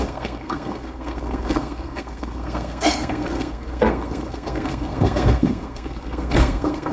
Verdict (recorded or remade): remade